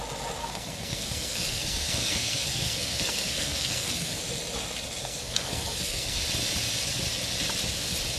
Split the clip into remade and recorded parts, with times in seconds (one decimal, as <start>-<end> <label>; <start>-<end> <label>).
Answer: 0.0-0.4 recorded; 0.4-4.2 remade; 4.2-5.0 recorded; 5.0-6.2 remade; 6.2-8.2 recorded